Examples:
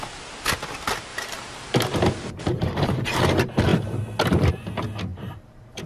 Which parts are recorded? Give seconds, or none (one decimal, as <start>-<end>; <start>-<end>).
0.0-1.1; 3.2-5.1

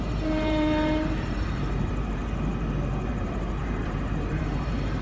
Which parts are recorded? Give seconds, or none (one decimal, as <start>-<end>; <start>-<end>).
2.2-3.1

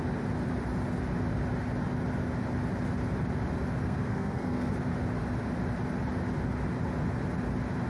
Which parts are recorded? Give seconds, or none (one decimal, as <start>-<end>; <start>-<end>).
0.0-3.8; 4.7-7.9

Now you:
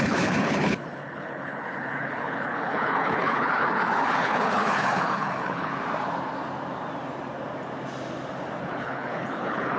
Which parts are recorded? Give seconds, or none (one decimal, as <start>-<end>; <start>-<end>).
5.7-8.6

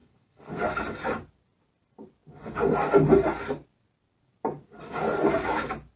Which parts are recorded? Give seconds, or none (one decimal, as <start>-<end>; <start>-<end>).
0.6-6.0

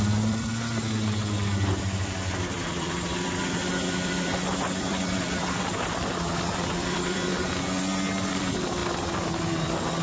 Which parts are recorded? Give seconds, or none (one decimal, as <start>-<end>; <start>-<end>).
7.3-8.3; 8.8-9.4